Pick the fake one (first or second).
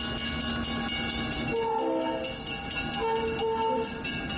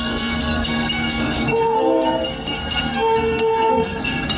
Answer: second